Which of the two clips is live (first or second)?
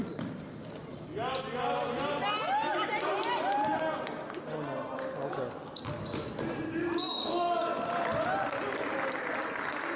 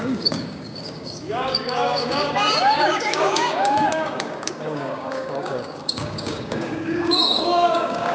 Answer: first